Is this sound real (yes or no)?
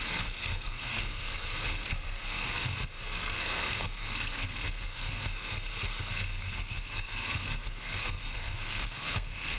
no